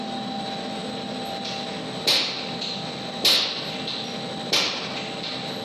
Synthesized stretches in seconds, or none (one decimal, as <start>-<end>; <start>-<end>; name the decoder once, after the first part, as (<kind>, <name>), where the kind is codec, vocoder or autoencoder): none